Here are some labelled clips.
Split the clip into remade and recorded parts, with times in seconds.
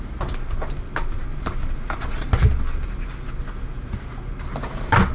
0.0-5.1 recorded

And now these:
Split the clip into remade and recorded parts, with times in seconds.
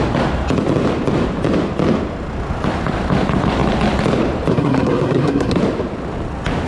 0.0-4.5 recorded; 4.5-5.6 remade; 5.6-6.7 recorded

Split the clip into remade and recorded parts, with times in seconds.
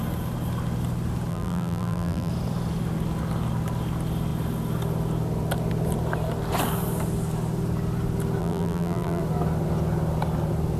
0.0-1.3 recorded; 1.3-2.3 remade; 2.3-8.4 recorded; 8.4-9.2 remade; 9.2-10.8 recorded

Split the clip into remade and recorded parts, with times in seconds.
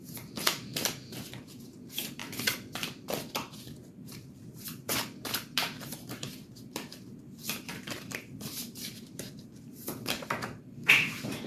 0.0-0.7 remade; 0.7-1.3 recorded; 1.3-2.2 remade; 2.2-3.9 recorded; 3.9-11.5 remade